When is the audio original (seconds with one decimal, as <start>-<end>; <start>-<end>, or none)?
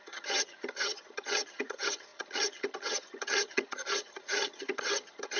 none